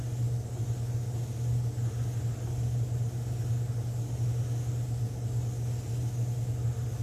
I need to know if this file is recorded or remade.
recorded